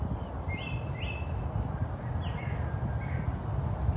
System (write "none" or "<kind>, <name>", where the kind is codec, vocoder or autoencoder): none